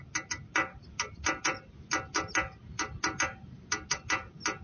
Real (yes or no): yes